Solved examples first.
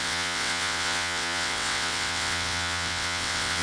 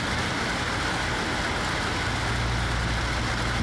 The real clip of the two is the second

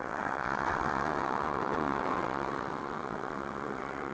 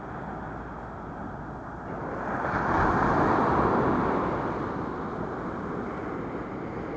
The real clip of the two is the second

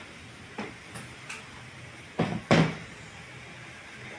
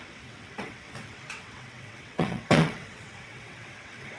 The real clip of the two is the first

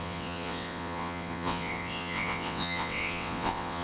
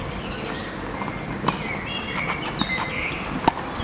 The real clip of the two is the second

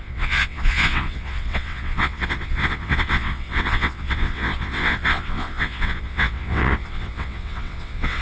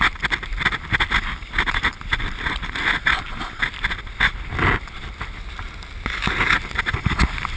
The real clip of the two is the second